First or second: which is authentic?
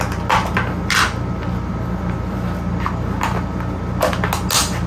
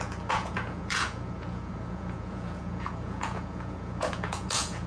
first